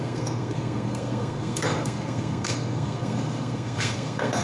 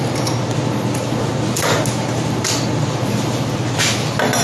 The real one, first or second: second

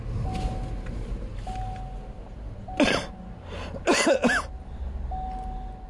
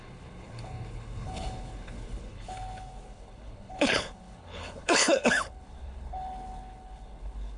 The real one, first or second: first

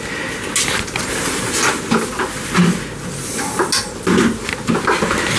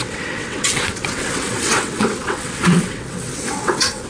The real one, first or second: first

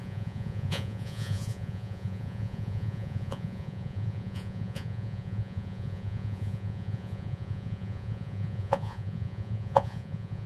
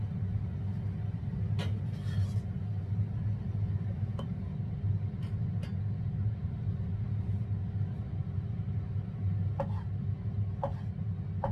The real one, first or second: second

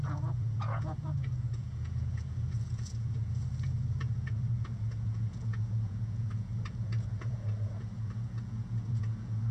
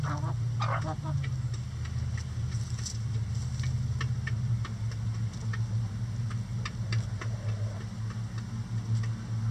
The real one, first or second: second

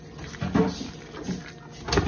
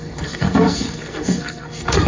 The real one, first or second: first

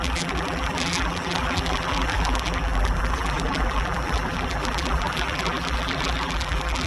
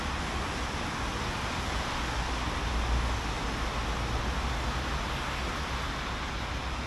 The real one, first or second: second